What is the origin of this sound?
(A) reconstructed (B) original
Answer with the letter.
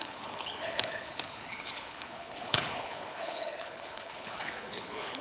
A